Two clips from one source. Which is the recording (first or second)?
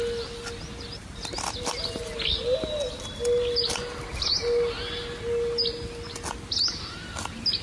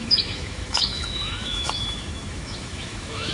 first